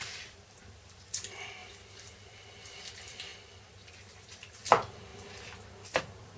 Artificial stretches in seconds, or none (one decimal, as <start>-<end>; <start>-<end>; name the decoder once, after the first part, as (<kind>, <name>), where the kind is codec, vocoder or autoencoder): 0.0-5.1 (vocoder, BigVGAN v2); 6.0-6.4